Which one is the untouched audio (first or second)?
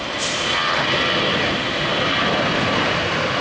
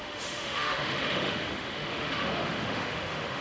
first